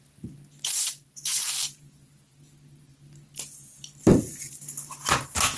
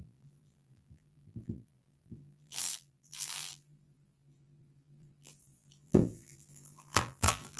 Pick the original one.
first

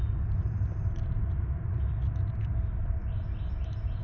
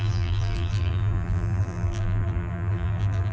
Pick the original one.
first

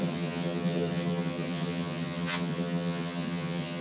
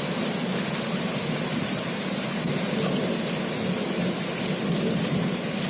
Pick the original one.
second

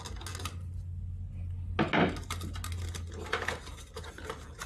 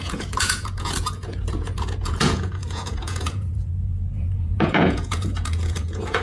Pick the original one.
first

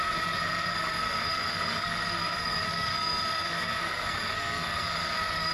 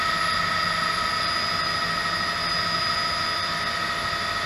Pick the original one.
second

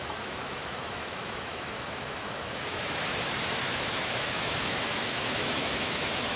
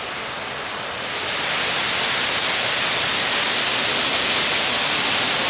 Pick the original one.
second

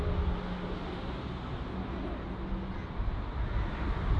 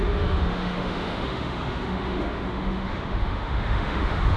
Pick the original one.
first